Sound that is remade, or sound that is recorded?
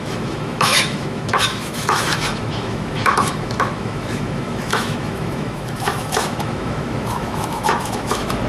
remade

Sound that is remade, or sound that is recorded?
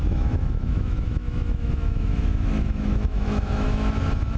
remade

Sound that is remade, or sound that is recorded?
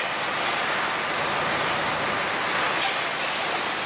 recorded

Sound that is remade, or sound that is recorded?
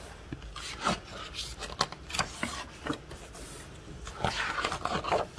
recorded